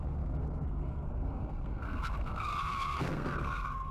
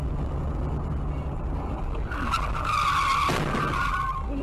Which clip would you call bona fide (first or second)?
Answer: second